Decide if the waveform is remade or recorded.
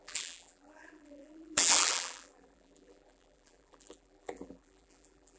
remade